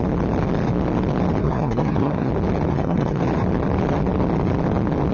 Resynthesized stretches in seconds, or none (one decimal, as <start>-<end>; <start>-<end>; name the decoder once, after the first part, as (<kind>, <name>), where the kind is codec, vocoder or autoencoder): 1.4-2.3 (codec, SNAC); 2.7-3.2